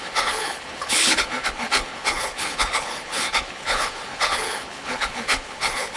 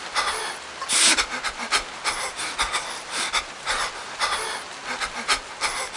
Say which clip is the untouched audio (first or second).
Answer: second